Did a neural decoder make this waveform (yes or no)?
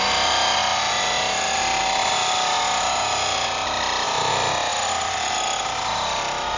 no